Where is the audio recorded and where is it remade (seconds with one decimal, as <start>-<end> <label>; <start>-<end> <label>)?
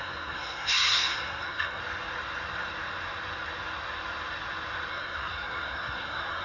0.0-1.8 remade; 1.8-4.9 recorded; 4.9-6.4 remade